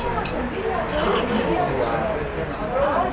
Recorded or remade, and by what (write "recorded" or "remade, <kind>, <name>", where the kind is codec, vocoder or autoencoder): recorded